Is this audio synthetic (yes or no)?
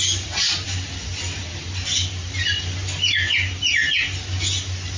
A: no